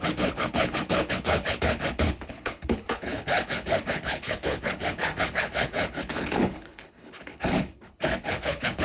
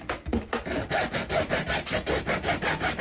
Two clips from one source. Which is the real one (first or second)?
second